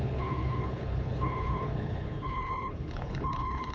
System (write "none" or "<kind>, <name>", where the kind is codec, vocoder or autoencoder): codec, HILCodec